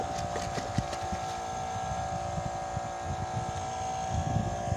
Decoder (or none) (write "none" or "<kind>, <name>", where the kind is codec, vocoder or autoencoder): none